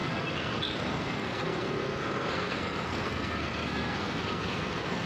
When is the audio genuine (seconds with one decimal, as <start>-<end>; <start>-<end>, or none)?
none